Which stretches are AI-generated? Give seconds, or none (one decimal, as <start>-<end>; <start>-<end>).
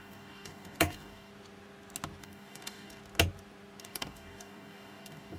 0.0-1.3; 2.2-3.0; 3.8-5.4